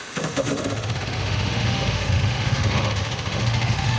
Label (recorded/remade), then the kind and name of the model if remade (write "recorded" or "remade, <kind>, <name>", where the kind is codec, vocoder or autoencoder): remade, autoencoder, DAC-VAE